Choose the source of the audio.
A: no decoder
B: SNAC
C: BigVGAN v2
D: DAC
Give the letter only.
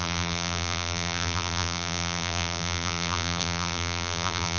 C